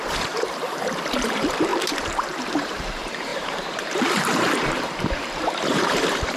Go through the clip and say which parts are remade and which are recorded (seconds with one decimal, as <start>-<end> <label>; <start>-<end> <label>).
0.0-6.4 remade